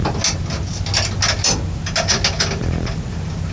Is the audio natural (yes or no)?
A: yes